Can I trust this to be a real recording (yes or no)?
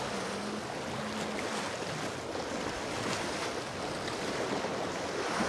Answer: yes